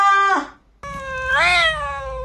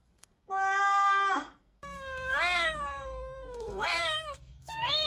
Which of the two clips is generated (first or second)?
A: second